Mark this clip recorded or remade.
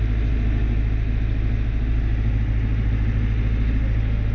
recorded